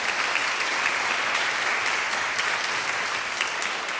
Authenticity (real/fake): real